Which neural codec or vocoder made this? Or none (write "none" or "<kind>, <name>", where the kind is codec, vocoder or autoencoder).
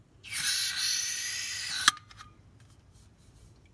none